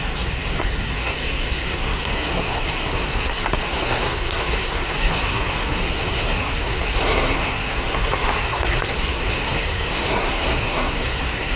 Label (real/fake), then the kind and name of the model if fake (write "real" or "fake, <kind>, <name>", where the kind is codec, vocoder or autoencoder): fake, codec, SNAC